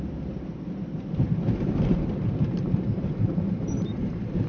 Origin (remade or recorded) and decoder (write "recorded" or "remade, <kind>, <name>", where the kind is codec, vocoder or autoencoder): remade, vocoder, BigVGAN v2